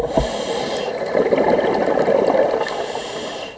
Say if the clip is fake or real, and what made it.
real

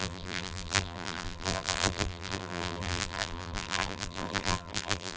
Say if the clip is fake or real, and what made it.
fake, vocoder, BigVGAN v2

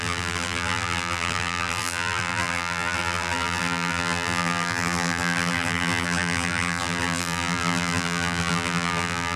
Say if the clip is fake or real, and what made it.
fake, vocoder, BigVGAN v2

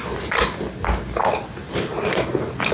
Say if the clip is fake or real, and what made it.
real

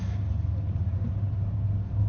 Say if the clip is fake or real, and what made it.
real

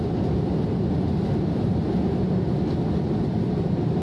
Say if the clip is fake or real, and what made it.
real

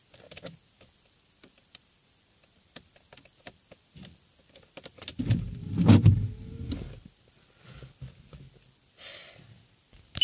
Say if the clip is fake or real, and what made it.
real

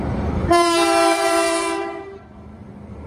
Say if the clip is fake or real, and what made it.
fake, vocoder, BigVGAN v2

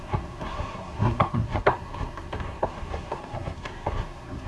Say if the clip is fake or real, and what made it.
fake, codec, SNAC